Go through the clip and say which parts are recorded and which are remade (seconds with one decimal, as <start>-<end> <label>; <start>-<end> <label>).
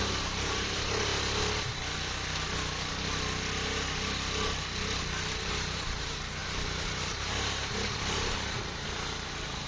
0.0-1.1 remade; 1.1-5.4 recorded; 5.4-9.7 remade